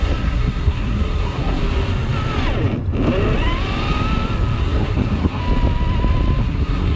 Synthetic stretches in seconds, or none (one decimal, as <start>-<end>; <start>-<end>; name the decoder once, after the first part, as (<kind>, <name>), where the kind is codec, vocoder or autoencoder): 0.0-1.6 (codec, SNAC); 4.6-5.4; 6.4-7.0